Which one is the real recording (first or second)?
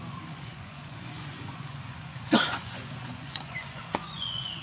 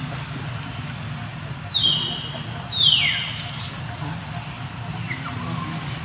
second